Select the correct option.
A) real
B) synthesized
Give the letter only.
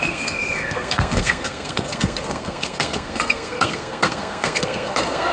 B